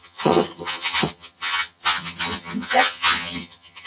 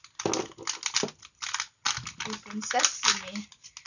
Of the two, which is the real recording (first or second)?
second